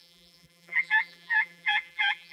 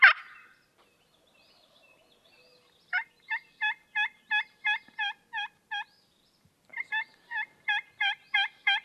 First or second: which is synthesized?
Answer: first